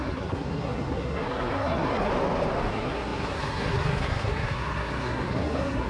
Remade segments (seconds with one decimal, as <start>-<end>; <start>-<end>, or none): 0.0-2.1; 2.7-5.9